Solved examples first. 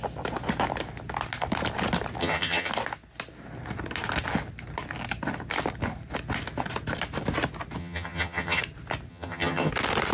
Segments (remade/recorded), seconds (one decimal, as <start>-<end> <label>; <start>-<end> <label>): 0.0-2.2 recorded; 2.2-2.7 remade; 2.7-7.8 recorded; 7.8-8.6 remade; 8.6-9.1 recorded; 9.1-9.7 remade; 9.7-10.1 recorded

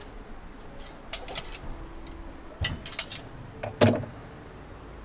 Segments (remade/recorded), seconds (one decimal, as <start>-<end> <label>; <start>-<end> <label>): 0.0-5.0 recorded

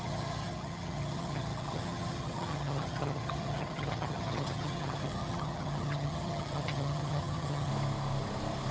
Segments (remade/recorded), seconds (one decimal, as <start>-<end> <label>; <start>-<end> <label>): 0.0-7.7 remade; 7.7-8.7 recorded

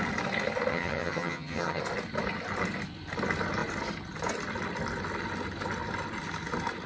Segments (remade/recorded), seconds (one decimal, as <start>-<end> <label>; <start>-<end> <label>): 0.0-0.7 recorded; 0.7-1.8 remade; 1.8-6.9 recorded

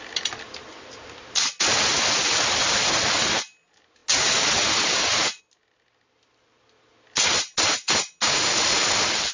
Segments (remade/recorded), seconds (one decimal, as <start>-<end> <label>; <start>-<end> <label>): 0.0-9.3 recorded

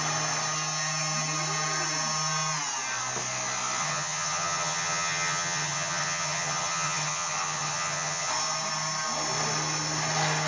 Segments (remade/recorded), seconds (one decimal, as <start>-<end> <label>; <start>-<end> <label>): 0.0-3.8 recorded; 3.8-8.3 remade; 8.3-10.5 recorded

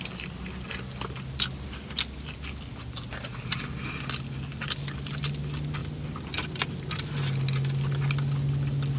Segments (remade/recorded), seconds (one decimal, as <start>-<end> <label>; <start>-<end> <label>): 0.0-9.0 recorded

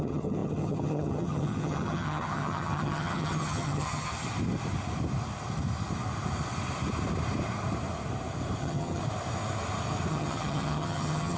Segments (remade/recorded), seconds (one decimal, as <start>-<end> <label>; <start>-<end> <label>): 0.0-4.1 remade; 4.1-8.6 recorded; 8.6-9.0 remade; 9.0-10.1 recorded; 10.1-11.4 remade